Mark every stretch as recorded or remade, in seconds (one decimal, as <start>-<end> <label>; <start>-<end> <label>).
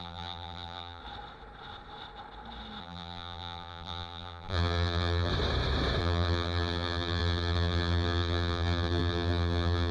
0.0-1.0 remade; 1.0-2.8 recorded; 2.8-5.3 remade; 5.3-6.0 recorded; 6.0-9.9 remade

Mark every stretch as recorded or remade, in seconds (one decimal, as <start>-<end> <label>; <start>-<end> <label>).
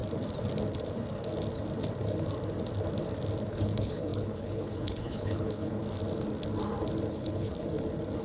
0.0-3.5 recorded; 3.5-5.8 remade; 5.8-7.1 recorded; 7.1-7.5 remade; 7.5-8.2 recorded